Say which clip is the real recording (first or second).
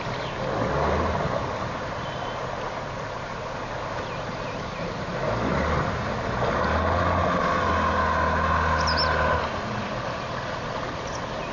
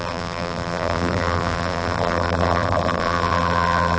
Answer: first